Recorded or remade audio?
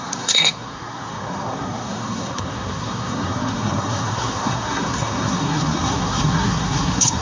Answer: remade